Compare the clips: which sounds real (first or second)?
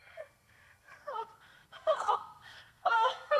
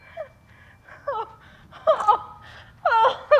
second